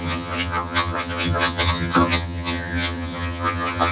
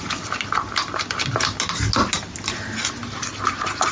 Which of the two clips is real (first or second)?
second